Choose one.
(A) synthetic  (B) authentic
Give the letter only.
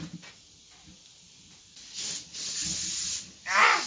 B